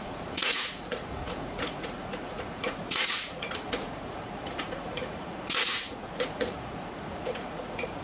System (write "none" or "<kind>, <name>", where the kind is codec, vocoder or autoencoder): vocoder, Vocos